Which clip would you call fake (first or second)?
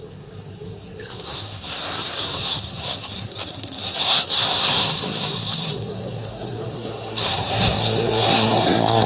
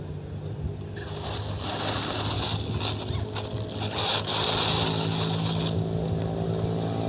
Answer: first